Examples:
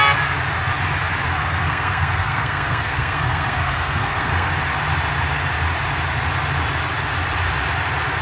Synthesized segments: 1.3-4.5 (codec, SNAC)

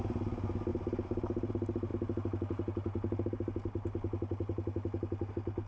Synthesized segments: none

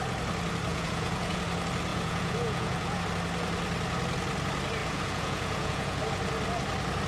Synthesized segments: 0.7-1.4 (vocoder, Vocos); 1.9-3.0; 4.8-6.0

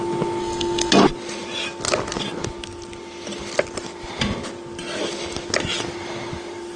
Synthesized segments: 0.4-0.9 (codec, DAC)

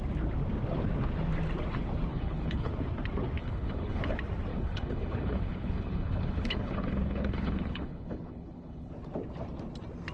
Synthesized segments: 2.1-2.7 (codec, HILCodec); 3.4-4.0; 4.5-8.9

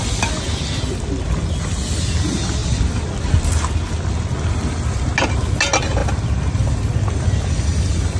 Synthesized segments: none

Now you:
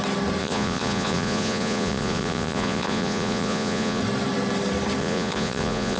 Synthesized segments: 0.4-4.0 (vocoder, Vocos); 5.0-6.0